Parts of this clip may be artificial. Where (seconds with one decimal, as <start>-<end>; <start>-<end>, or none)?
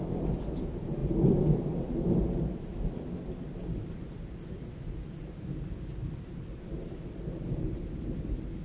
none